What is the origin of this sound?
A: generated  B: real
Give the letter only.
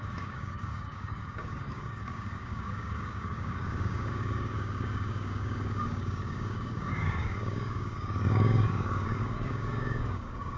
A